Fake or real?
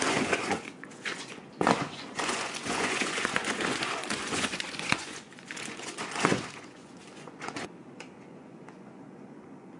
fake